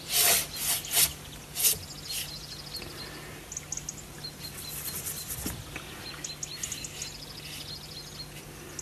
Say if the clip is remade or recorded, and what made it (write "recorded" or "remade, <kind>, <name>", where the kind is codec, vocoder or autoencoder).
recorded